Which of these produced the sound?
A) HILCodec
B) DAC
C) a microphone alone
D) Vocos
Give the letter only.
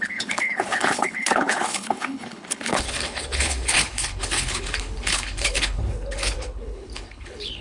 A